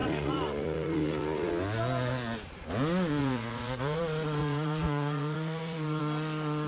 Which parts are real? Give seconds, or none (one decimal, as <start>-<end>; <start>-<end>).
1.5-3.2; 4.0-4.4; 6.0-6.7